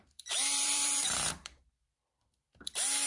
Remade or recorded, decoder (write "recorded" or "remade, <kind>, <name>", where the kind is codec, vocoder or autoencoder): remade, vocoder, BigVGAN v2